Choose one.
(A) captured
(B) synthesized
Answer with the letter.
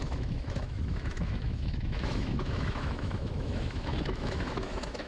B